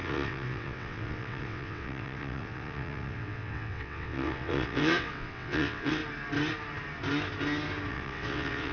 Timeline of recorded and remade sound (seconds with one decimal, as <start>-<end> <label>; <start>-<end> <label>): 0.0-6.0 remade; 6.0-7.9 recorded; 7.9-8.7 remade